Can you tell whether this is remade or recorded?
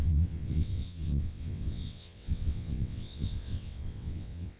remade